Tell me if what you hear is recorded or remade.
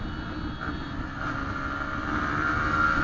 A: recorded